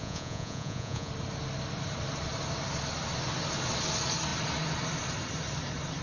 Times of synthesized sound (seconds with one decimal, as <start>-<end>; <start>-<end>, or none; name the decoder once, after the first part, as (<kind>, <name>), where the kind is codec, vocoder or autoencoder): 0.0-1.1 (vocoder, Vocos)